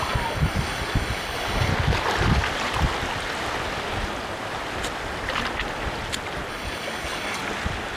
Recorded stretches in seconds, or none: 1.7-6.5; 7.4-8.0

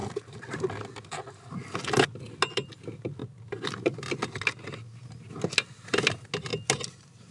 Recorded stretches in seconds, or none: 0.8-3.2; 4.3-7.3

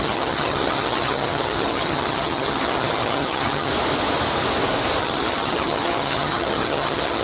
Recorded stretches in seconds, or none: 3.7-5.0

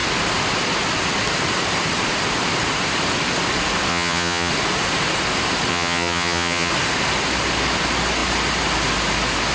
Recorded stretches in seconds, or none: 0.0-3.9; 4.5-5.7; 6.7-9.5

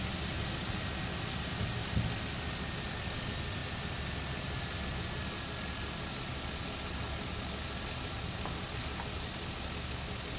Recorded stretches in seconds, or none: 0.0-10.4

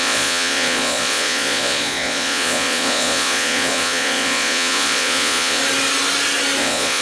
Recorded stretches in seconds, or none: 5.6-6.6

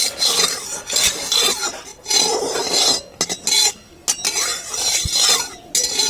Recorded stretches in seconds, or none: 0.0-6.1

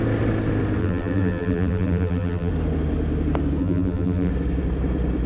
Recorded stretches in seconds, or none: 0.0-0.8; 2.5-3.6; 4.3-5.3